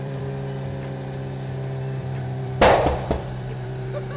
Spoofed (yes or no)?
yes